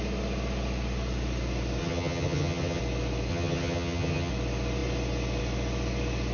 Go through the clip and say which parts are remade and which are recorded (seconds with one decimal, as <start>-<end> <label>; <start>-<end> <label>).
0.0-1.8 recorded; 1.8-2.8 remade; 2.8-3.3 recorded; 3.3-4.3 remade; 4.3-6.3 recorded